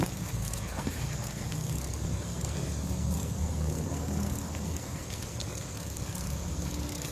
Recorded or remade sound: remade